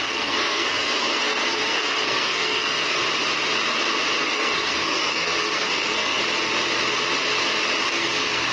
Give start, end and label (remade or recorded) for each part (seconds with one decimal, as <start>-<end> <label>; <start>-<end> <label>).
0.0-3.0 remade; 3.0-4.2 recorded; 4.2-6.2 remade; 6.2-7.8 recorded; 7.8-8.5 remade